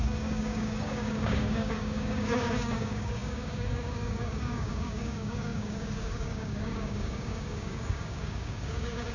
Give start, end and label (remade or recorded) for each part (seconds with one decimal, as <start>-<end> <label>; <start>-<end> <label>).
0.0-9.1 remade

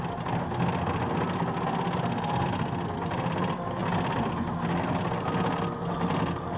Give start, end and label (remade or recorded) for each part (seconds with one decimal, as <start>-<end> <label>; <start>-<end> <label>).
0.0-6.6 recorded